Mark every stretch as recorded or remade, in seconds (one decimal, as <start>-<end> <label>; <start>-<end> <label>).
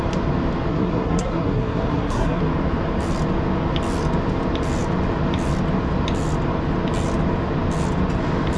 0.0-0.7 recorded; 0.7-2.4 remade; 2.4-8.6 recorded